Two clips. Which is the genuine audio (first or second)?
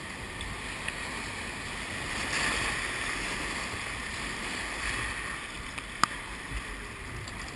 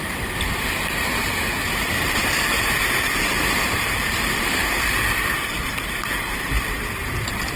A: first